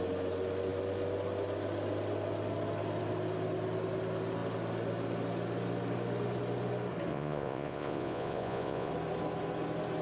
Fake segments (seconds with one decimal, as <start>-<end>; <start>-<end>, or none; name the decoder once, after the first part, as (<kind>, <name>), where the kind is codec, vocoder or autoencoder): 7.1-8.9 (vocoder, Vocos)